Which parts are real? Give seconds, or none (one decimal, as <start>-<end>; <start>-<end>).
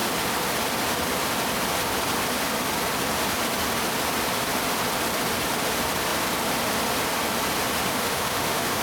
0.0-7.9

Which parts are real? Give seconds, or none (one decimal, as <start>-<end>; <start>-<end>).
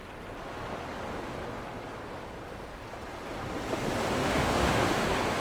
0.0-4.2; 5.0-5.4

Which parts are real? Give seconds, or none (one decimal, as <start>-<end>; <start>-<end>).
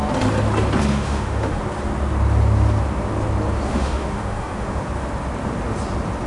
0.0-0.9; 1.6-3.7; 4.8-6.3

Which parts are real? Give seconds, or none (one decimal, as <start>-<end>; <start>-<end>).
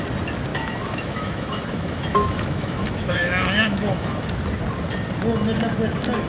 0.0-0.5; 4.3-6.3